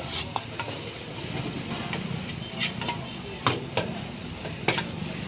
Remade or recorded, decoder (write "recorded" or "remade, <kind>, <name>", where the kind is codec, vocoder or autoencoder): recorded